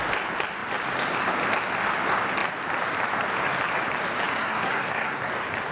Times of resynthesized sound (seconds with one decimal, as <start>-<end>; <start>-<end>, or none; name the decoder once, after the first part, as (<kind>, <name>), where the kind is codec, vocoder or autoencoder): 4.4-5.3 (codec, SNAC)